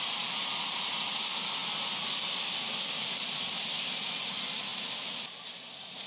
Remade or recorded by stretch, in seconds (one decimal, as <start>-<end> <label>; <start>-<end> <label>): 0.0-6.1 recorded